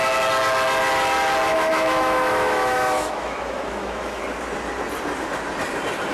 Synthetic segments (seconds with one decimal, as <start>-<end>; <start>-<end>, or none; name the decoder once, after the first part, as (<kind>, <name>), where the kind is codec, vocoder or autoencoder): 1.5-4.2 (autoencoder, DAC-VAE)